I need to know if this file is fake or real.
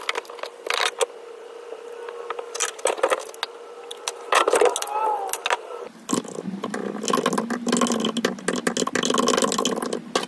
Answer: real